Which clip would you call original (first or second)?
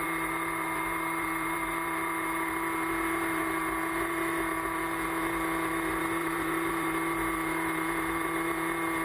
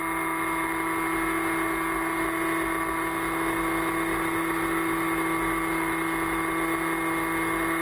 second